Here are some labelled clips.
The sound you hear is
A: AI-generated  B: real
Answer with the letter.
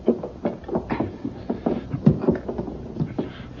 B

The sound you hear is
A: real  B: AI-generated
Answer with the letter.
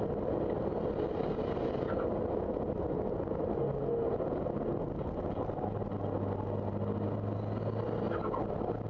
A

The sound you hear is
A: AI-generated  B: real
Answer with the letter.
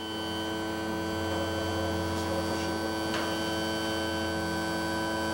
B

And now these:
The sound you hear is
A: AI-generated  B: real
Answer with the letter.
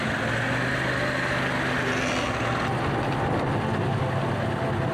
B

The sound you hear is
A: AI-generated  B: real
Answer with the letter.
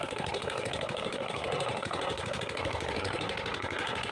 A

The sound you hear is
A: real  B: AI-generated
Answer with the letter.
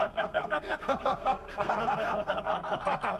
B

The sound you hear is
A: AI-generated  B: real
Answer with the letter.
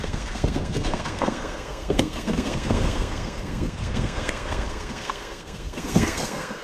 A